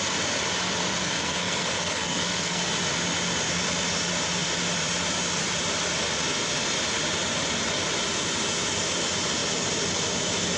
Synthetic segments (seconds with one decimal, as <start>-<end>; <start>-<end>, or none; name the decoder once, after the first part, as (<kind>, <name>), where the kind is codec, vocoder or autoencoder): 1.0-2.7 (codec, SNAC)